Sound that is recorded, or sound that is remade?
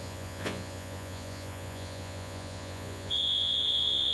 remade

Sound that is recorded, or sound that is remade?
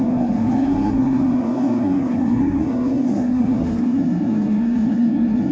remade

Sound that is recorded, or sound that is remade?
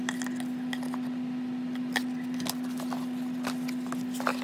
recorded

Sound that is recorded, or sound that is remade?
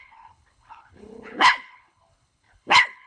remade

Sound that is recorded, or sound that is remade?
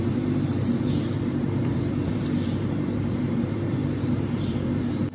remade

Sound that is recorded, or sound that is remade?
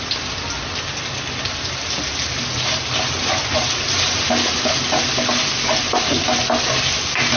recorded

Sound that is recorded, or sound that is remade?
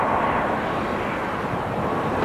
recorded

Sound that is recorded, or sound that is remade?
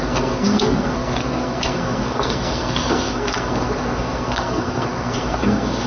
remade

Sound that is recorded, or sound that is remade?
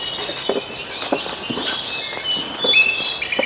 recorded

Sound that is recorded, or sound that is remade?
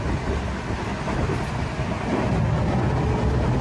recorded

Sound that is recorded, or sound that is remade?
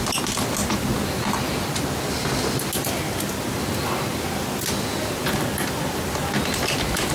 recorded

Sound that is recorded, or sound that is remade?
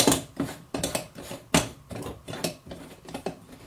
remade